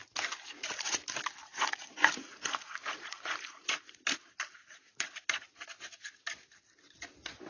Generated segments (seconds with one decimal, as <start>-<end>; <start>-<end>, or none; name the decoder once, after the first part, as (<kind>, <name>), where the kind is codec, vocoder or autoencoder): 1.4-3.8 (vocoder, Vocos); 4.6-5.2

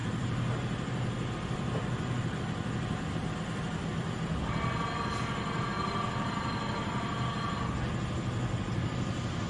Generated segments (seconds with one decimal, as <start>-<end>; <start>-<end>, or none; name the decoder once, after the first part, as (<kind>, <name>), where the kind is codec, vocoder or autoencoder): none

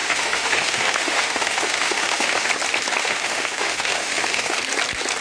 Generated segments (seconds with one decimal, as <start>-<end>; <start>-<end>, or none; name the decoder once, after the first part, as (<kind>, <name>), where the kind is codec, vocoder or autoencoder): 0.0-2.5 (autoencoder, DAC-VAE); 3.0-4.6

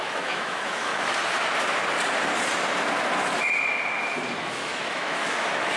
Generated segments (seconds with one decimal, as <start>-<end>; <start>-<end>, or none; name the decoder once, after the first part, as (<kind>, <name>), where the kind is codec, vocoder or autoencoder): 0.0-0.9 (autoencoder, DAC-VAE); 4.4-5.8

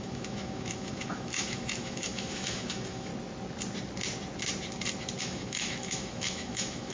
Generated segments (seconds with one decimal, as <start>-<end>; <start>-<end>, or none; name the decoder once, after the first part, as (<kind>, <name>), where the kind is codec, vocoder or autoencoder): 0.0-3.1 (autoencoder, DAC-VAE); 5.2-6.9

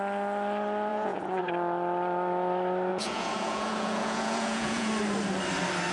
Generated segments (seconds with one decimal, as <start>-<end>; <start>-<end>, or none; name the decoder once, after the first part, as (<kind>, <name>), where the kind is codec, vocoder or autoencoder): 0.9-1.4 (vocoder, Vocos); 2.9-4.9

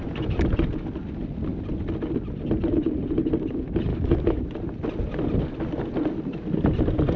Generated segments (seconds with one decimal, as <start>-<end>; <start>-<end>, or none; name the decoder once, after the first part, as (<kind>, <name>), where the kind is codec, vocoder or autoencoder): 3.9-4.4 (autoencoder, DAC-VAE)

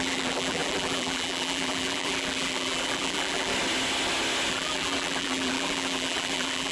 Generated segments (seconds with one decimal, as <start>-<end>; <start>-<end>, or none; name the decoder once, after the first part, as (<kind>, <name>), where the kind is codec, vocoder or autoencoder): 0.0-3.5 (vocoder, BigVGAN v2); 4.5-6.7